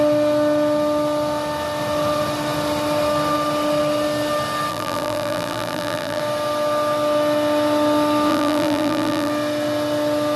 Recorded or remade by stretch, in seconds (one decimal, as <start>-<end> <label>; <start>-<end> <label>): 0.0-4.7 recorded; 4.7-6.2 remade; 6.2-8.3 recorded; 8.3-9.3 remade; 9.3-10.4 recorded